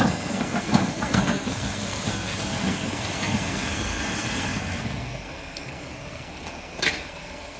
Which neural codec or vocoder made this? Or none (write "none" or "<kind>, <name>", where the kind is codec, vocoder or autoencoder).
codec, SNAC